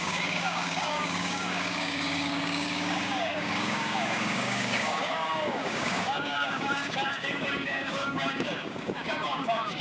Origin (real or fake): fake